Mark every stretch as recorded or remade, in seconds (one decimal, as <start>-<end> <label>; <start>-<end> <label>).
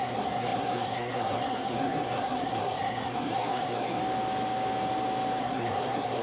0.0-4.0 remade; 4.0-5.4 recorded; 5.4-6.2 remade